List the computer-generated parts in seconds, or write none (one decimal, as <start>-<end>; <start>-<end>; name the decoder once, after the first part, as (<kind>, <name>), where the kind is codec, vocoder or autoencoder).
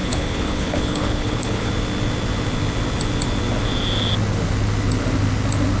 0.0-1.7 (codec, HILCodec)